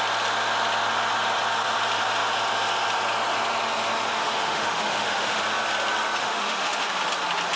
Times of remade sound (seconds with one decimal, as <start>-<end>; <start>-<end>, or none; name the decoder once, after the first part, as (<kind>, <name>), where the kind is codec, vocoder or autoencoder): 4.2-5.4 (autoencoder, DAC-VAE); 6.2-6.9